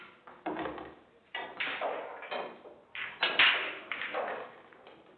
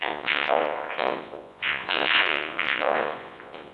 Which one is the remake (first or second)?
second